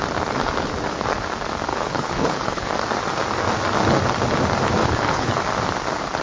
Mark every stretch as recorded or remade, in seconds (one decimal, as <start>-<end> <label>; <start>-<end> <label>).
0.0-1.7 recorded; 1.7-2.7 remade; 2.7-4.8 recorded; 4.8-5.4 remade; 5.4-6.2 recorded